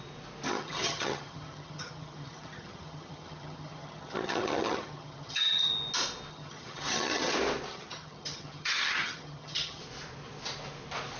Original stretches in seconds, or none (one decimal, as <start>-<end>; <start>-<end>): 0.0-0.5; 5.7-6.3; 7.3-7.7; 9.8-11.2